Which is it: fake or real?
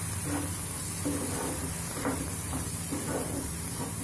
real